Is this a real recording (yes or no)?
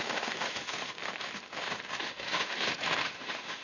no